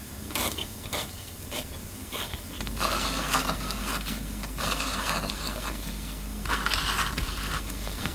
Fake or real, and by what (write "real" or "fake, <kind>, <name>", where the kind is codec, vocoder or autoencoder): fake, codec, SNAC